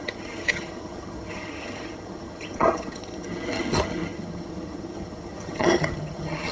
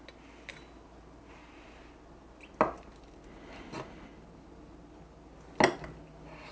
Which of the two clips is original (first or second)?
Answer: second